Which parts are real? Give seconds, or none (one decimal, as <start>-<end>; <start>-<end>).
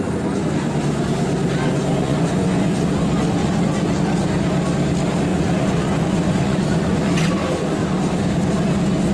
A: 0.0-2.0; 2.9-3.4; 4.0-5.3; 7.3-9.1